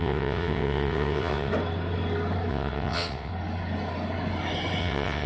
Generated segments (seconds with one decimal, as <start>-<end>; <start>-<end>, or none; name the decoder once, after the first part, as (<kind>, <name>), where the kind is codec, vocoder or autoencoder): 0.0-1.5 (vocoder, WaveNeXt); 2.5-3.3; 4.8-5.3